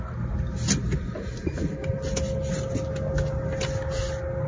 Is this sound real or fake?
real